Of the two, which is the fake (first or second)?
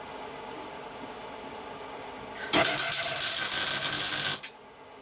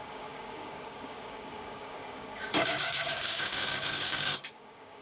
second